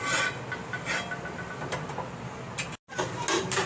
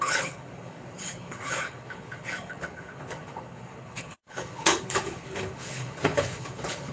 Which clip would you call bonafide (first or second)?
first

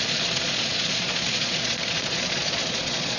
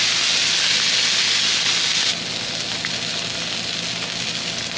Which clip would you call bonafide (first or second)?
second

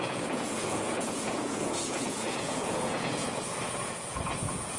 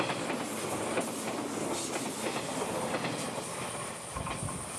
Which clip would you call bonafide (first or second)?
second